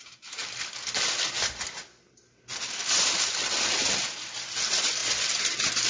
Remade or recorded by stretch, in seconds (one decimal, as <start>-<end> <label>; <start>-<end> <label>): 0.0-5.9 recorded